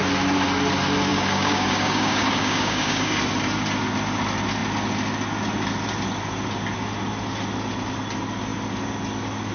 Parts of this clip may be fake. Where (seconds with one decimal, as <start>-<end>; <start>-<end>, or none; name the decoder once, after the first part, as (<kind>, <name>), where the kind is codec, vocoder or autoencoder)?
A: 1.1-3.2 (codec, DAC)